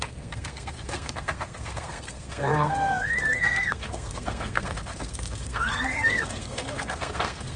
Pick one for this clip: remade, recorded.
remade